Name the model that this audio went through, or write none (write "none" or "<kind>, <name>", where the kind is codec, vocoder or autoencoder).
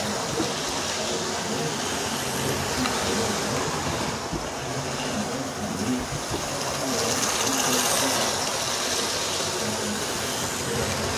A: none